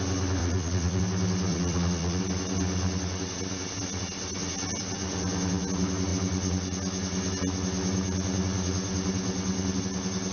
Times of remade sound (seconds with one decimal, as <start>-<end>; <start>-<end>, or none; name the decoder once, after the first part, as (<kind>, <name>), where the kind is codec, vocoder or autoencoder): 0.4-1.0 (vocoder, Vocos); 1.5-2.2